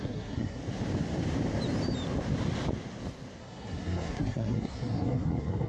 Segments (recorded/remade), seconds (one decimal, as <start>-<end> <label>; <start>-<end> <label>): 0.0-0.6 remade; 0.6-3.4 recorded; 3.4-5.7 remade